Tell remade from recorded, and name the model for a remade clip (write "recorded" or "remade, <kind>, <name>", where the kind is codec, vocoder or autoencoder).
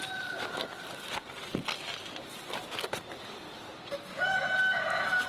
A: recorded